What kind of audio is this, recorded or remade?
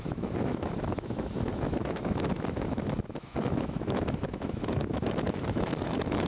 remade